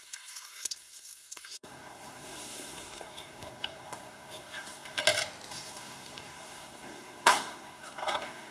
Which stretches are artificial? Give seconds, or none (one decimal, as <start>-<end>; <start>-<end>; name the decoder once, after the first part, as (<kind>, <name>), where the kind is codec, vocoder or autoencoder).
0.0-5.0 (codec, SNAC); 5.5-8.5